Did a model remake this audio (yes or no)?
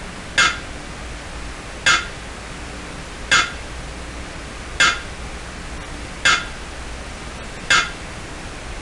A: no